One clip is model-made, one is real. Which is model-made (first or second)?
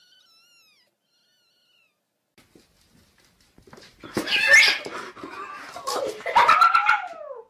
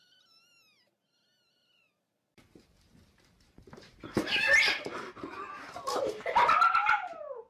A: second